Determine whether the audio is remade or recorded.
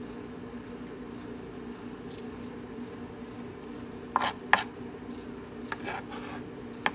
recorded